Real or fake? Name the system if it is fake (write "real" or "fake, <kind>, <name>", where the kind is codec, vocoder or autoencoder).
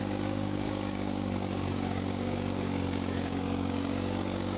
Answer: fake, codec, DAC